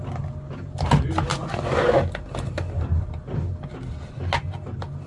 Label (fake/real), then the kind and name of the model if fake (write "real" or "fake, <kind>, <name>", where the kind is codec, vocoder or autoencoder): real